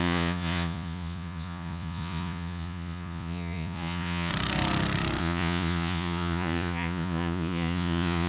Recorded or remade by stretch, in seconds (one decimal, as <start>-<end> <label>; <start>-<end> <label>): 0.0-4.3 remade; 4.3-5.2 recorded; 5.2-8.3 remade